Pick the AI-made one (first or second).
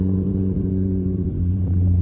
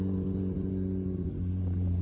first